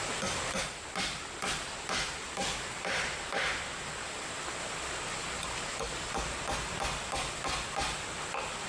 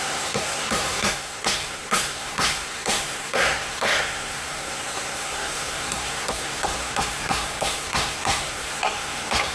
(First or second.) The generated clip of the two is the second